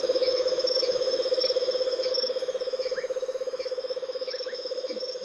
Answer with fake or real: fake